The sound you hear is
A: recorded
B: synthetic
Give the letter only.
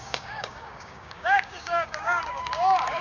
B